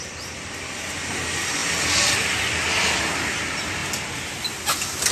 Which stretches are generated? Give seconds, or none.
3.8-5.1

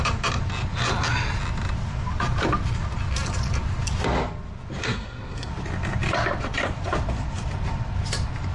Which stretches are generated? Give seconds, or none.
4.8-5.5

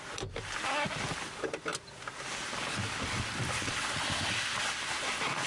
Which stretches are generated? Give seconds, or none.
none

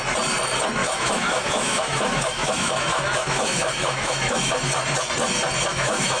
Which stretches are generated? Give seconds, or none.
0.8-4.5; 5.7-6.2

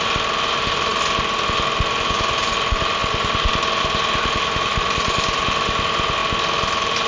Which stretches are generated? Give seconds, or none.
4.7-5.4

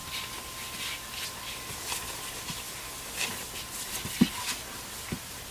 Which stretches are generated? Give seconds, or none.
none

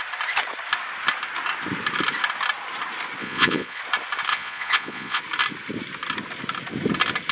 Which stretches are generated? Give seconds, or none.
3.2-3.8; 4.3-5.2

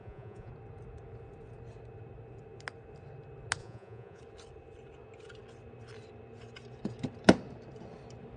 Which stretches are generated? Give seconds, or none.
0.0-0.5; 3.6-4.2